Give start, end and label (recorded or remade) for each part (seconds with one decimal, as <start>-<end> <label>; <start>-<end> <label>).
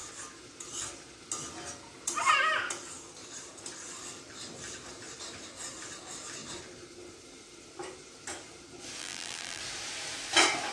0.0-9.0 recorded; 9.0-9.6 remade; 9.6-10.7 recorded